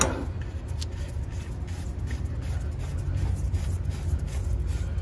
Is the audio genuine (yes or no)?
yes